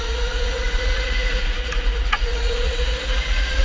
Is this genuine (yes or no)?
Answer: no